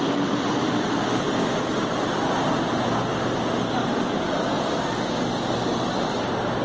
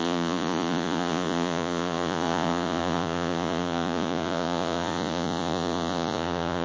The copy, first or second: second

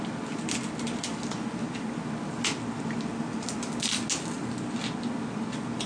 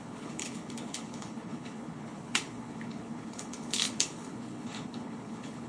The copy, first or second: second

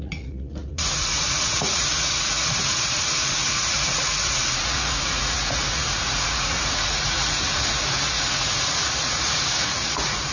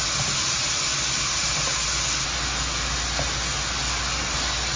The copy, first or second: first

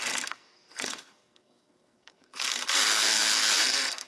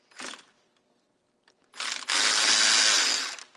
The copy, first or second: first